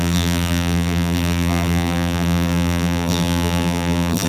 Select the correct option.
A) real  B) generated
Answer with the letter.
B